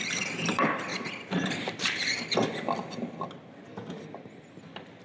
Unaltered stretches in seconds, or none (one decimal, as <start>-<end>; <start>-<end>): 0.0-0.9; 2.2-5.0